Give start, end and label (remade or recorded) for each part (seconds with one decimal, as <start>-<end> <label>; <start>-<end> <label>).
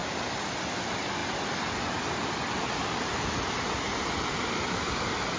0.0-5.4 recorded